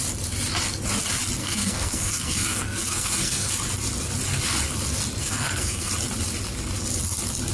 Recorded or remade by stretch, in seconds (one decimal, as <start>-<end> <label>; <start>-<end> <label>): 0.0-1.4 recorded; 1.4-3.5 remade; 3.5-5.2 recorded; 5.2-5.9 remade; 5.9-7.5 recorded